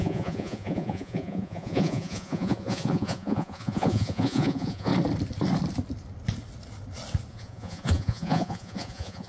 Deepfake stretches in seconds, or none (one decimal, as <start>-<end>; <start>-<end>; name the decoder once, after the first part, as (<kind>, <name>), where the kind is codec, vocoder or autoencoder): 0.0-4.9 (vocoder, Vocos); 7.3-9.3